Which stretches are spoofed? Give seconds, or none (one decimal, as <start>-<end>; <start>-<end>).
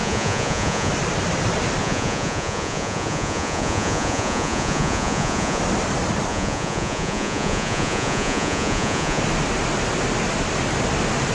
0.0-0.9; 1.8-5.6; 6.3-9.2